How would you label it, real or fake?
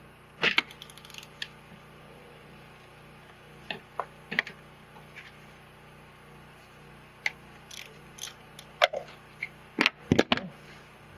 real